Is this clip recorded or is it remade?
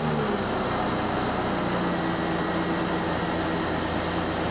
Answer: recorded